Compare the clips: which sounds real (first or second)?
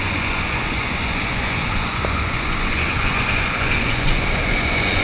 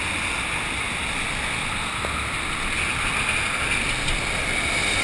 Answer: second